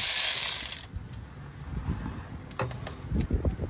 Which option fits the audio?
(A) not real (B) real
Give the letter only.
B